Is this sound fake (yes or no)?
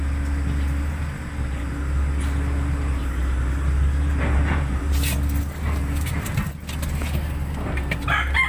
no